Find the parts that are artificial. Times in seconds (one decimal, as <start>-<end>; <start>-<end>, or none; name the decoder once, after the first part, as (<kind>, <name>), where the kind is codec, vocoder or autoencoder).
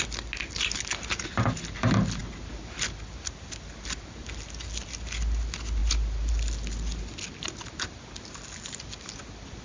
none